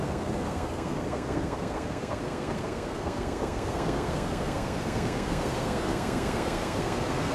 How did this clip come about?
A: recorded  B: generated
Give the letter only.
B